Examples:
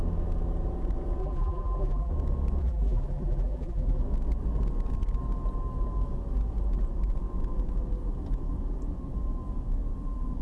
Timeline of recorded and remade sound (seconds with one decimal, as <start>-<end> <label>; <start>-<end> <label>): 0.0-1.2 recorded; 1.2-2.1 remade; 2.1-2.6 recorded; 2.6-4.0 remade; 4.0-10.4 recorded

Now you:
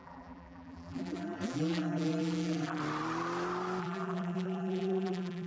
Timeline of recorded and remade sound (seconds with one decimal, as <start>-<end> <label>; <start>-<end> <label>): 0.0-2.8 remade; 2.8-3.8 recorded; 3.8-5.5 remade

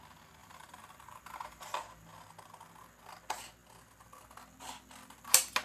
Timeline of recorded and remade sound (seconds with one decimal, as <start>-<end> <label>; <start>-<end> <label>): 0.0-0.4 recorded; 0.4-1.6 remade; 1.6-5.6 recorded

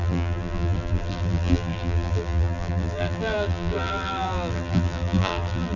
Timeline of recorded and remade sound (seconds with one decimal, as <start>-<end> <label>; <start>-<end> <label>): 0.0-5.8 remade

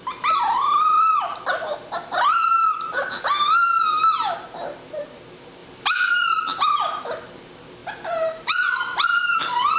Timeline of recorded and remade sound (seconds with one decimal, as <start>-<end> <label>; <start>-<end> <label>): 0.0-9.8 remade